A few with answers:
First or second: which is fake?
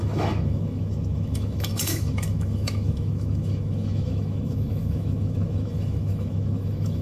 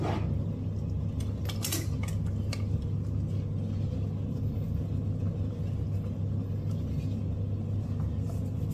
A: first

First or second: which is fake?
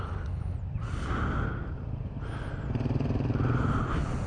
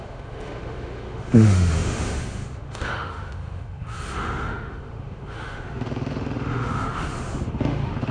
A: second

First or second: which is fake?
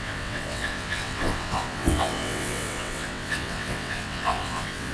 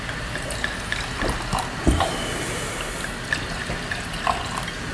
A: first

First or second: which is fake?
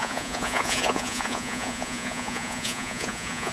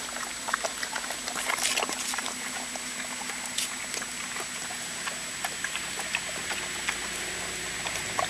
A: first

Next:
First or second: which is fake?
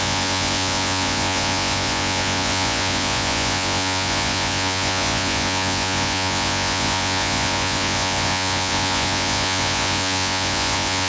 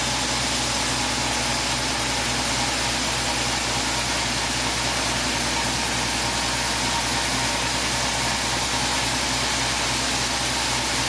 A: first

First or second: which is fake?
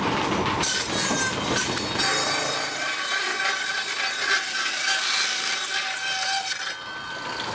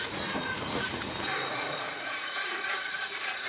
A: second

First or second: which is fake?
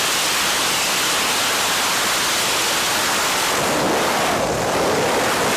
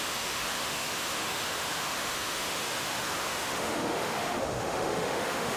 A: second